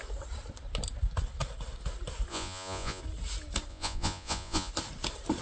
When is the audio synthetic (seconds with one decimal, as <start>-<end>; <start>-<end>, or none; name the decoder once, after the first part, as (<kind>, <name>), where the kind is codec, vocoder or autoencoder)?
2.3-3.0 (vocoder, Vocos); 3.7-4.7